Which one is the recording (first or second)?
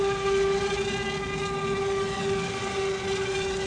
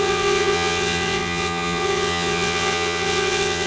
first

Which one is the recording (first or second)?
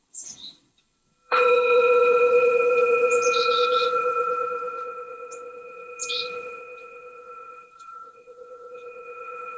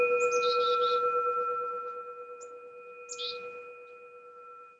second